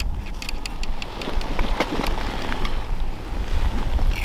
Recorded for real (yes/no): no